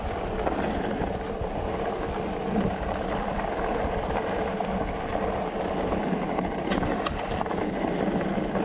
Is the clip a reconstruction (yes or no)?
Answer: no